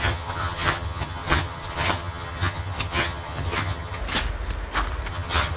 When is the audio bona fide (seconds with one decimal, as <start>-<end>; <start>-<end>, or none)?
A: 4.0-5.1